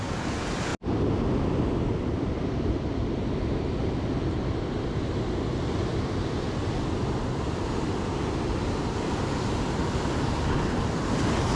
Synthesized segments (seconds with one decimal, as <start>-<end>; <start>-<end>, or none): none